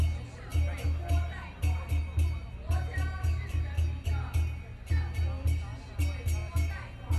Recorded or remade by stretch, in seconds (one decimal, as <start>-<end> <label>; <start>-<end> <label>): 0.0-7.2 recorded